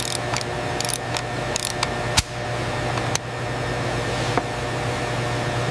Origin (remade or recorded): recorded